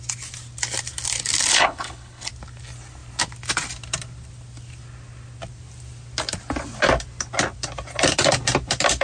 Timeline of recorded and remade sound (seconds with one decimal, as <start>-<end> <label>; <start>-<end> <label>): 0.0-1.5 recorded; 1.5-2.3 remade; 2.3-9.0 recorded

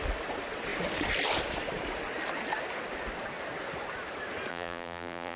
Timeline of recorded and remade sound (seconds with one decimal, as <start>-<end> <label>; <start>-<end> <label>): 0.0-4.5 recorded; 4.5-5.4 remade

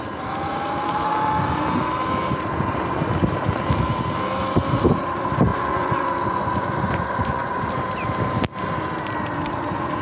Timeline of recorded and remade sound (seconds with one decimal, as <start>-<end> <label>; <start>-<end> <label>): 0.0-5.5 recorded; 5.5-7.7 remade; 7.7-10.0 recorded

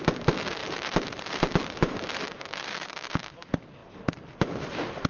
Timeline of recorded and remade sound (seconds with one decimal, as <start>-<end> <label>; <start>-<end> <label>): 0.0-0.6 recorded; 0.6-3.3 remade; 3.3-5.1 recorded

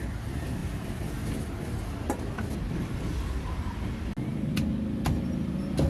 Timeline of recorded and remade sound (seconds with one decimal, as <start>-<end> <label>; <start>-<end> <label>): 0.0-5.9 recorded